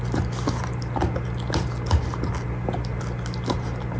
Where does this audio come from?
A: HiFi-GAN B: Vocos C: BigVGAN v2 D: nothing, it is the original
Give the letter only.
D